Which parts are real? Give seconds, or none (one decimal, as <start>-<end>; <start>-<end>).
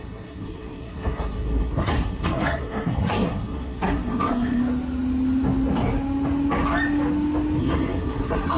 4.6-7.6